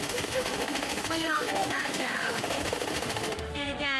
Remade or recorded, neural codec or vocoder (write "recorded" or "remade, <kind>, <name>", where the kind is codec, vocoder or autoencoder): remade, autoencoder, DAC-VAE